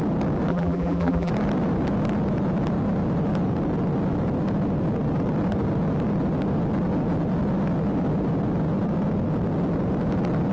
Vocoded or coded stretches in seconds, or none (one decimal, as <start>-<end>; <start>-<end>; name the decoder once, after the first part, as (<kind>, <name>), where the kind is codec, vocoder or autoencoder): 0.5-1.3 (vocoder, BigVGAN v2)